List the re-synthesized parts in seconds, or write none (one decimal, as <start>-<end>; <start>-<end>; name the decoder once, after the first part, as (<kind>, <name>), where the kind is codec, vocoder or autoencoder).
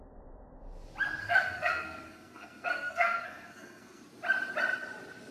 1.2-4.0 (codec, SNAC)